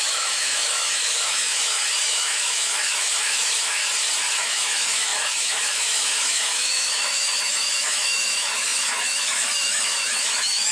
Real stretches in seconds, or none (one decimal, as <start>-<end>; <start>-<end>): 3.8-4.3